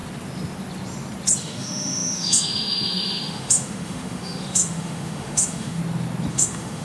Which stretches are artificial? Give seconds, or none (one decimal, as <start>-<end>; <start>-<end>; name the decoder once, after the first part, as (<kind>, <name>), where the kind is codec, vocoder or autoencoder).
1.4-5.8 (autoencoder, DAC-VAE); 6.3-6.8